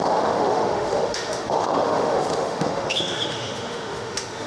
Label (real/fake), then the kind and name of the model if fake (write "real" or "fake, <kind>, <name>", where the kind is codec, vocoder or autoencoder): fake, autoencoder, DAC-VAE